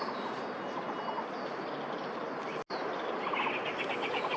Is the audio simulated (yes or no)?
no